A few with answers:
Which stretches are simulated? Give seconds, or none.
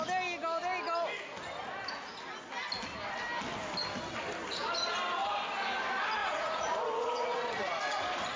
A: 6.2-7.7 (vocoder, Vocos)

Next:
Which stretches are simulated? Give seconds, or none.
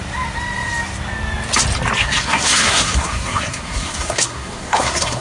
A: 2.0-5.2 (codec, SNAC)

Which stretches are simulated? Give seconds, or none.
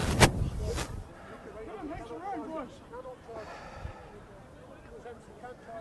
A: 0.0-3.5 (vocoder, BigVGAN v2)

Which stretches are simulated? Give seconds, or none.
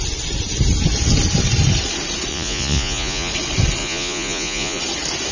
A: 2.3-3.3 (vocoder, Vocos); 3.8-4.8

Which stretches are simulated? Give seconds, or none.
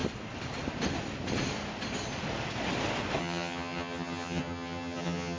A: 3.2-5.4 (vocoder, HiFi-GAN)